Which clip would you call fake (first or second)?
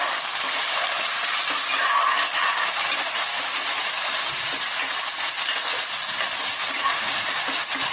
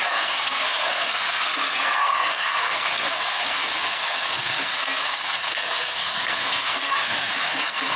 second